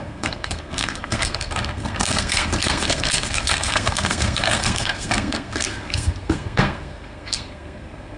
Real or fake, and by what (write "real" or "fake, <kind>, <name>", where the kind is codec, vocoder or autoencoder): fake, codec, SNAC